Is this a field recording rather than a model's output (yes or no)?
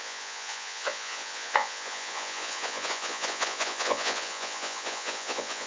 no